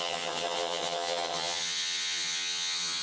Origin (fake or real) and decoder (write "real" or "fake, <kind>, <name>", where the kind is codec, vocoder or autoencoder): fake, vocoder, HiFi-GAN